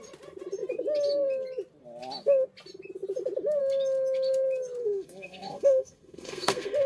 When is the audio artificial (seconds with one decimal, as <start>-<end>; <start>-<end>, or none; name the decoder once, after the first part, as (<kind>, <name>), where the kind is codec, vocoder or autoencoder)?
4.8-6.9 (codec, SNAC)